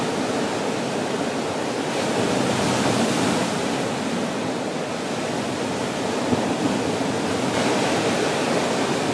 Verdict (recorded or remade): recorded